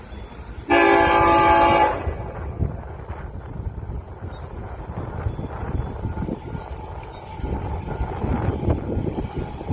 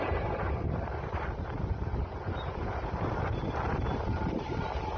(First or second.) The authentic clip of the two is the first